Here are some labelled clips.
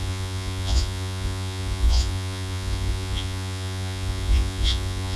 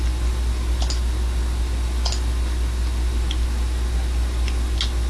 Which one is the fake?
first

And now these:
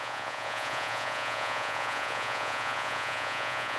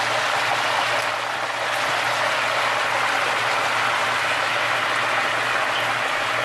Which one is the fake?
first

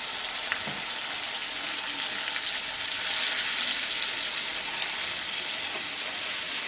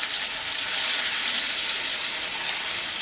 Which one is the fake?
second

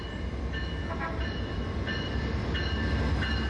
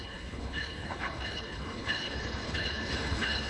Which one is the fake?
second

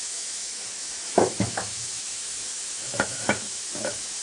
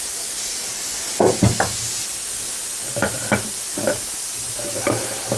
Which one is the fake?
first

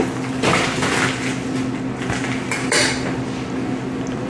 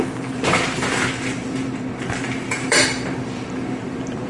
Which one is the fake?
second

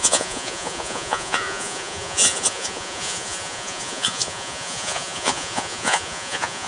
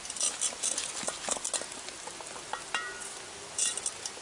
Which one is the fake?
first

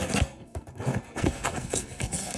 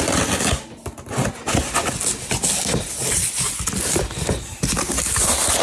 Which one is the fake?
first